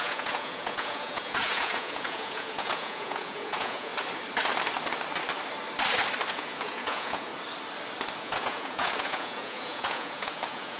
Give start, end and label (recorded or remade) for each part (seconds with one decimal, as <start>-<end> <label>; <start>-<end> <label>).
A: 0.0-3.9 remade; 3.9-6.3 recorded; 6.3-7.3 remade; 7.3-8.2 recorded; 8.2-10.8 remade